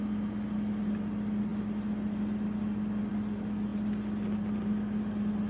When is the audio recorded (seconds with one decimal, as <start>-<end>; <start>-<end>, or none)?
0.0-5.5